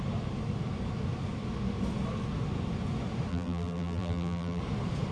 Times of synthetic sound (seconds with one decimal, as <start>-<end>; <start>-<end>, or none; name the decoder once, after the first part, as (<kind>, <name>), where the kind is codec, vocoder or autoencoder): 3.3-4.6 (vocoder, BigVGAN v2)